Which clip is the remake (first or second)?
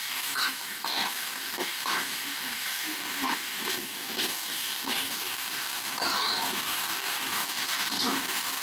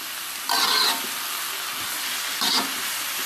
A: first